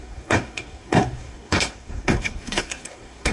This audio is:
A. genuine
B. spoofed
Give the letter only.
B